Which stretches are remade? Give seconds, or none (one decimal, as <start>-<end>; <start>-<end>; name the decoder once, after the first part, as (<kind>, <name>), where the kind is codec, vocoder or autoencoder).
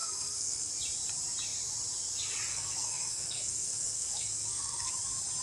0.0-0.7 (codec, SNAC); 2.5-4.9